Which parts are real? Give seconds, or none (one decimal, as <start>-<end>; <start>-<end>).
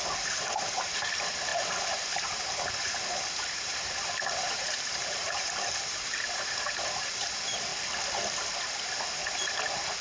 7.7-9.2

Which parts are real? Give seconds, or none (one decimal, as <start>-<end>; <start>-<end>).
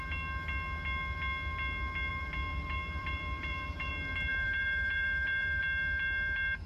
0.0-2.1; 3.9-4.3; 5.6-6.7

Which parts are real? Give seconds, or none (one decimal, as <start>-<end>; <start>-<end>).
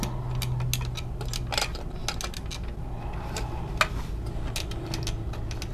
0.0-5.7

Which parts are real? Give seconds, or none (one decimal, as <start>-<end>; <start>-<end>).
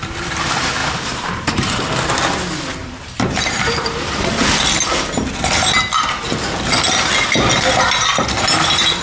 0.0-0.8; 1.8-2.8; 4.4-9.0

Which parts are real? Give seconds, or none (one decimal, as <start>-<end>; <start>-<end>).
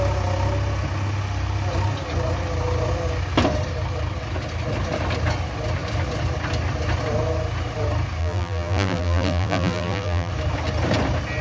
0.0-8.2; 10.3-11.4